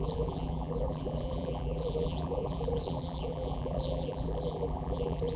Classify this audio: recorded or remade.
remade